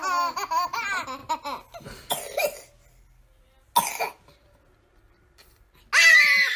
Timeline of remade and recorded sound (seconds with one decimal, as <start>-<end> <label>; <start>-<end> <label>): 0.0-6.6 recorded